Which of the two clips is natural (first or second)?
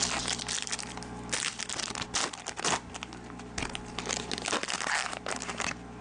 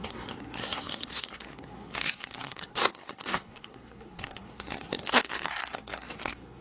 first